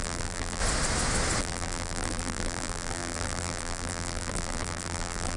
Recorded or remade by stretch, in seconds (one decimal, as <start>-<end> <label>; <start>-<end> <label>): 0.0-0.6 remade; 0.6-1.4 recorded; 1.4-5.4 remade